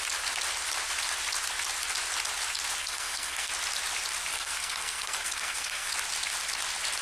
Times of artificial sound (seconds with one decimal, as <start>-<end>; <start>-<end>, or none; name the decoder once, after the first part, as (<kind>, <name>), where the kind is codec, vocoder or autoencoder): 2.8-3.5 (codec, SNAC); 4.3-5.9